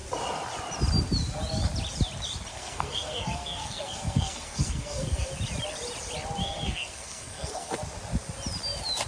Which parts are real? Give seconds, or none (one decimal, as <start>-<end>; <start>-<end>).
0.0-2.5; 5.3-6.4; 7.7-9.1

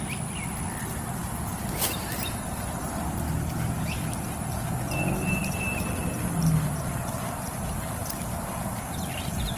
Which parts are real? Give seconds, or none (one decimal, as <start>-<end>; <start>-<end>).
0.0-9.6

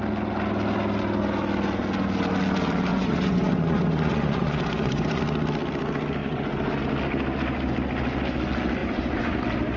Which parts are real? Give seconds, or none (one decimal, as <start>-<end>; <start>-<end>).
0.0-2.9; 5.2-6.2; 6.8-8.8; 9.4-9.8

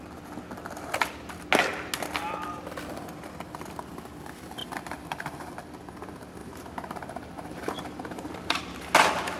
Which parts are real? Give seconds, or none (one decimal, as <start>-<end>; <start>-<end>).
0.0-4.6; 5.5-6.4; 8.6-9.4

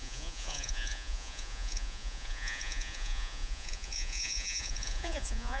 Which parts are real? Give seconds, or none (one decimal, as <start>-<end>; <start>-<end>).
none